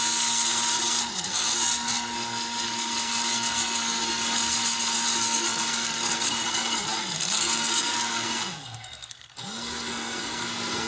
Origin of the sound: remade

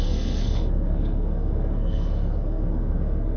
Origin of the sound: remade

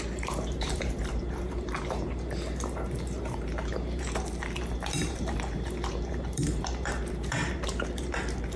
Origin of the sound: remade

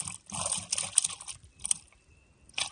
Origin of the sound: recorded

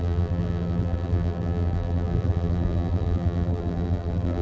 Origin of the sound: remade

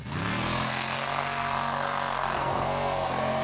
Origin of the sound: remade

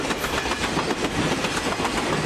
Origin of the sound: recorded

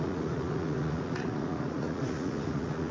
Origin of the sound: remade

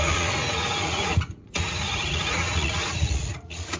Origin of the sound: remade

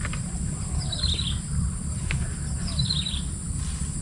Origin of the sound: recorded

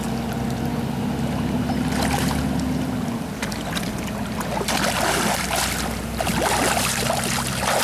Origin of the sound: recorded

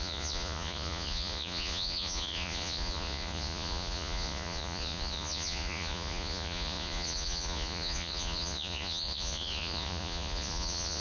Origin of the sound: remade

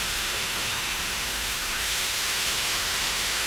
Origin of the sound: remade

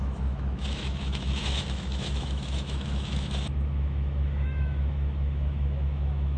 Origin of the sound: remade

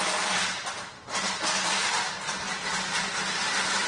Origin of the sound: remade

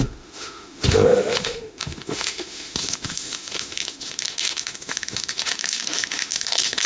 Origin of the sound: remade